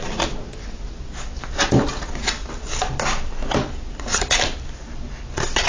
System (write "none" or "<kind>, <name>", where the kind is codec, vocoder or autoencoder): none